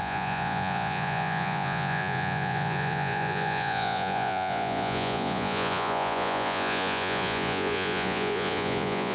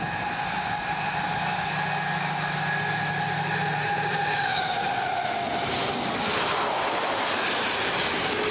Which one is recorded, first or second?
second